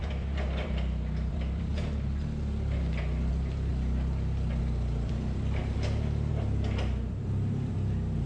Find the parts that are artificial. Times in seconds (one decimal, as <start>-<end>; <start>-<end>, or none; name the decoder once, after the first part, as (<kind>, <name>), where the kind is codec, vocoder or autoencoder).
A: 0.0-1.7 (vocoder, BigVGAN v2); 3.3-3.7; 4.6-8.3